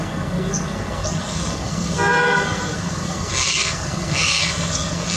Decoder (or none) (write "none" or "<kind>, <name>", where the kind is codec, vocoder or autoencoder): codec, SNAC